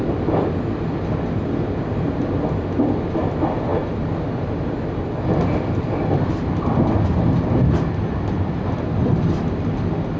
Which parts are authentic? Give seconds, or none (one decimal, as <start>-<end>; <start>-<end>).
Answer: 0.0-10.2

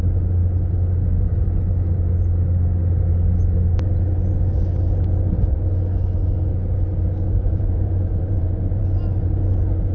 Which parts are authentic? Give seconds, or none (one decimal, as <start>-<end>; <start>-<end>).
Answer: 0.0-7.3; 8.8-9.9